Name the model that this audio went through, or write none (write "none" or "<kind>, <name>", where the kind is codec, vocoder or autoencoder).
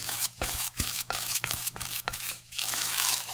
autoencoder, DAC-VAE